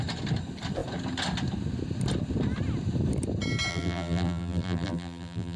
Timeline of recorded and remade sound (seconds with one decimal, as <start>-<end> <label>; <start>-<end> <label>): 0.0-3.7 recorded; 3.7-5.6 remade